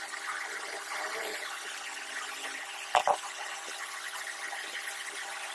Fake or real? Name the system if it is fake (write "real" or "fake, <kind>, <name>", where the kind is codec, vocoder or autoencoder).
real